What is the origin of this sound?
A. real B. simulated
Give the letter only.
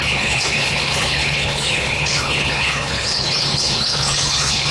B